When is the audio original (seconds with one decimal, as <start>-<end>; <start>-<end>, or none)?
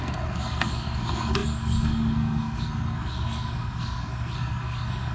none